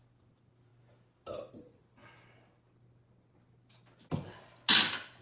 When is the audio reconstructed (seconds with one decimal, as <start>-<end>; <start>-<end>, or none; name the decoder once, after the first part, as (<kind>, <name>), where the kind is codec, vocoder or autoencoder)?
none